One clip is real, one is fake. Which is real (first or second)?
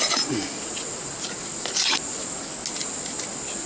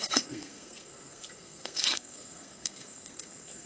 first